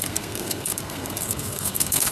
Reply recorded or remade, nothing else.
remade